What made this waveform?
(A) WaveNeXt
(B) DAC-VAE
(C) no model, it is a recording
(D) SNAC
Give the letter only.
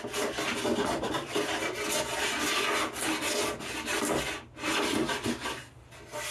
C